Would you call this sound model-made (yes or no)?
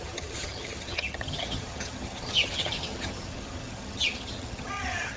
yes